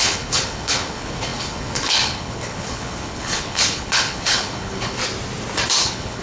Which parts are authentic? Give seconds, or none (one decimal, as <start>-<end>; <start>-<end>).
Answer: 5.0-5.8